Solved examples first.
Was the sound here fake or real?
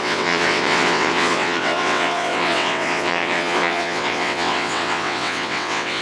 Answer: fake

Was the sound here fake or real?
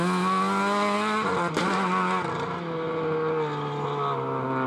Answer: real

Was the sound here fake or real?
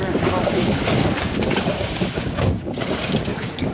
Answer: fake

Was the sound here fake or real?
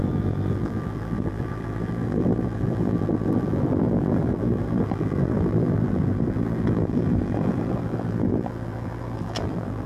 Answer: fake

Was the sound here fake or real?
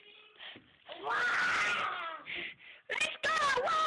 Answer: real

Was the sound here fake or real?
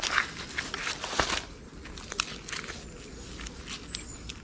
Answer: real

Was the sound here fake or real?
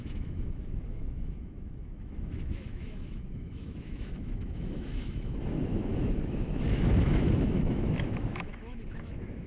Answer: fake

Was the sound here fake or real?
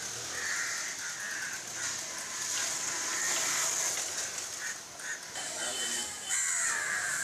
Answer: real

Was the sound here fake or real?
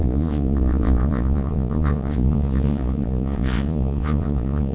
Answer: fake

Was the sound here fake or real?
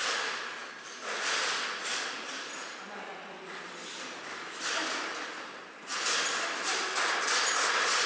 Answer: fake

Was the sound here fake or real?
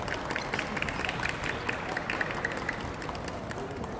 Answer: real